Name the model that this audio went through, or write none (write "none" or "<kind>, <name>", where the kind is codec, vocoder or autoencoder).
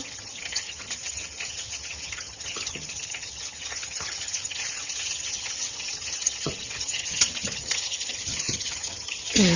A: vocoder, HiFi-GAN